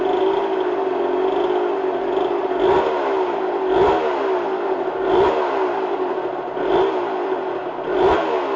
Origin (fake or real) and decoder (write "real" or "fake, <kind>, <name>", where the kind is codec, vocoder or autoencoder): real